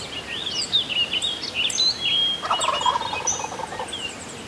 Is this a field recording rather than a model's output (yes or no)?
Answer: yes